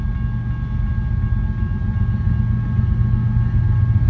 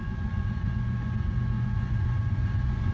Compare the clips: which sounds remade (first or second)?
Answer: second